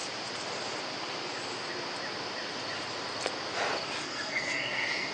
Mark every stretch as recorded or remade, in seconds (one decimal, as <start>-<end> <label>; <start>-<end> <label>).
0.0-4.0 recorded; 4.0-5.1 remade

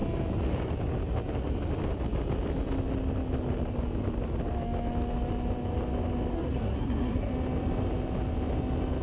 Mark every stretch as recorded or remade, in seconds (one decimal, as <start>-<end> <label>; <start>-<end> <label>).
0.0-6.3 recorded; 6.3-7.3 remade; 7.3-9.0 recorded